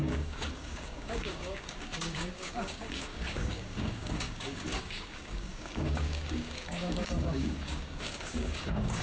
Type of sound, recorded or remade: remade